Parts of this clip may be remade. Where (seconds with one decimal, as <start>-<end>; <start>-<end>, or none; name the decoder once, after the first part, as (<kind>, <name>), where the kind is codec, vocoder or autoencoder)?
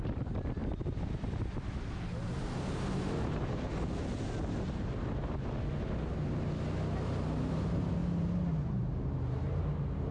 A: none